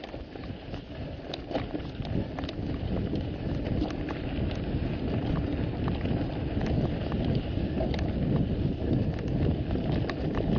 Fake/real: real